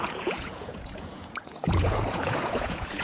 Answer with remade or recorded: remade